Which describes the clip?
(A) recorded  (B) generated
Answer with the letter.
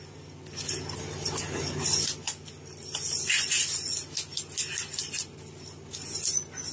A